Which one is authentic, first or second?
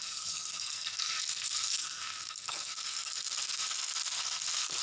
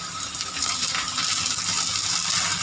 second